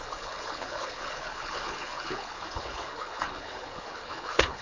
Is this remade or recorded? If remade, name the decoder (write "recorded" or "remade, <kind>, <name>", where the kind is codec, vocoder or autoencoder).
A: remade, codec, HILCodec